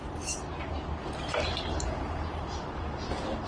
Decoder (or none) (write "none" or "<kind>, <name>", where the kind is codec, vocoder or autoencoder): vocoder, BigVGAN v2